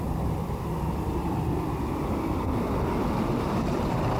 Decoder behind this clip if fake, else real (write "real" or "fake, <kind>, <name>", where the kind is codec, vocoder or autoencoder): fake, vocoder, BigVGAN v2